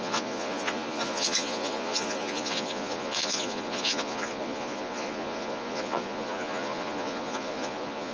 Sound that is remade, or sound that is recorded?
remade